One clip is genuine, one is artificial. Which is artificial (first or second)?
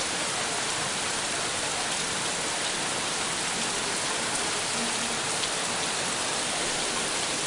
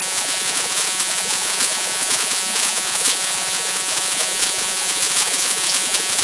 second